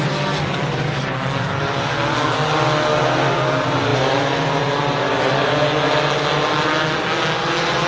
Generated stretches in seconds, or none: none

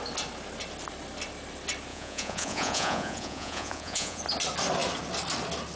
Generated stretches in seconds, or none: 1.9-4.2 (vocoder, Vocos)

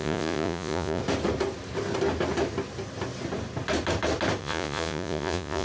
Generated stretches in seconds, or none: 0.0-1.0 (vocoder, Vocos); 4.4-5.6

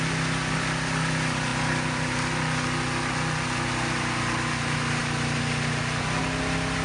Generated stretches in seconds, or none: none

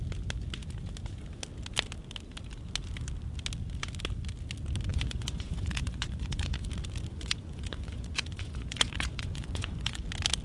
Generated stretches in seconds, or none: 4.9-6.6 (vocoder, Vocos); 7.1-10.0